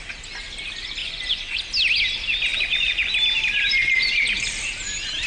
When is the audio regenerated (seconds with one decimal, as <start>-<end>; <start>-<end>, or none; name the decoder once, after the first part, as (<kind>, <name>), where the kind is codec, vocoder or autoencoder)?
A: 1.0-1.6 (vocoder, Vocos); 2.5-3.1